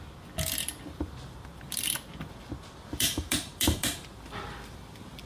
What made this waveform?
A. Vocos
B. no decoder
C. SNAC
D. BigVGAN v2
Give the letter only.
D